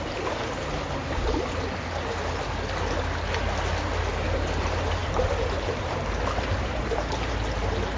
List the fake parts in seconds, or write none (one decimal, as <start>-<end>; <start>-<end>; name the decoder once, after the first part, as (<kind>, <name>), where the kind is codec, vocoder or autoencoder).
5.0-7.3 (vocoder, BigVGAN v2)